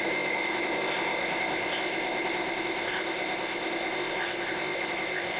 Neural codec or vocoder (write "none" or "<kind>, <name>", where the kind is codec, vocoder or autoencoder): codec, ZipCodec